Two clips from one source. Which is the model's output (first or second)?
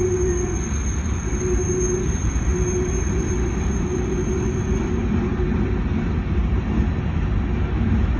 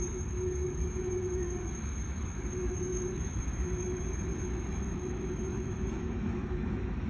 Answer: second